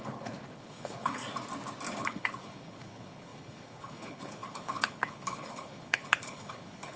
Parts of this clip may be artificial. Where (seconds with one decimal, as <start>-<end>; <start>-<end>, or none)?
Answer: 0.0-1.2; 2.0-7.0